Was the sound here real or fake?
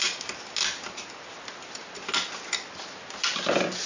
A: real